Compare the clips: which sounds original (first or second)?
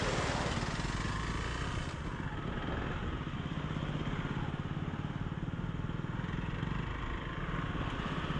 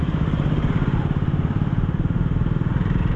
first